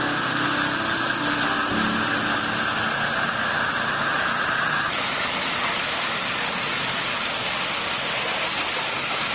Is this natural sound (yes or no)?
yes